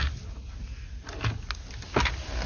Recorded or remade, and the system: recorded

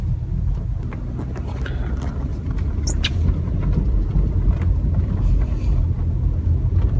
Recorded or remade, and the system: recorded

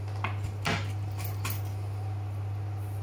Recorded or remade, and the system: recorded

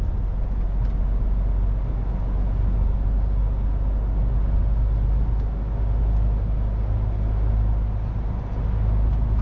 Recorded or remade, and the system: recorded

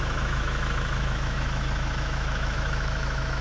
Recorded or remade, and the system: remade, autoencoder, DAC-VAE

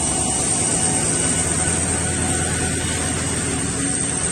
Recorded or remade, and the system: recorded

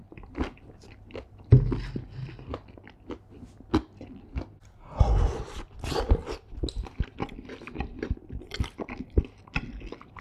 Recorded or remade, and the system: recorded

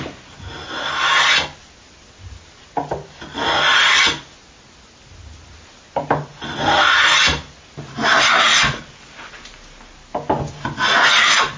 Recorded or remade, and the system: recorded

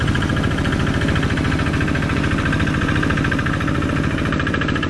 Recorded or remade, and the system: recorded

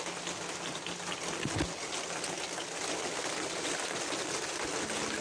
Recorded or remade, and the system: recorded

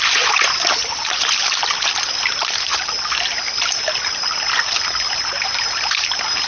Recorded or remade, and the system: recorded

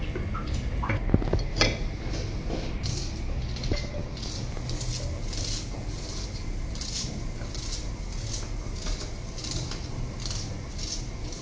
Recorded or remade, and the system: recorded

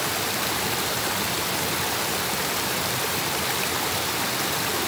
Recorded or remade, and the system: recorded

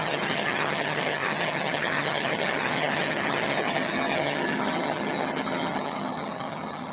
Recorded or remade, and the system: remade, vocoder, HiFi-GAN